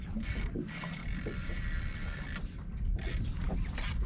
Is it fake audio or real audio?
real